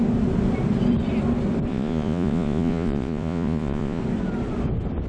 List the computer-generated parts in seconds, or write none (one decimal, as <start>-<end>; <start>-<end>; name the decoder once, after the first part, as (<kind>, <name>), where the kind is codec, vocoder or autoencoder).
1.7-4.0 (vocoder, Vocos)